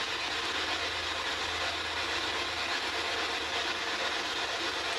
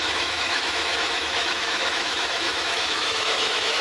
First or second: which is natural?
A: first